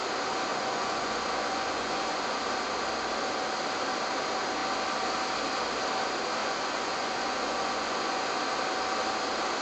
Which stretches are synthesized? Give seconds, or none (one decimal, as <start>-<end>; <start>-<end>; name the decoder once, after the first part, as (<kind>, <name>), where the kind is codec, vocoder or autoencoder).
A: 0.5-2.4 (vocoder, Vocos); 6.4-8.3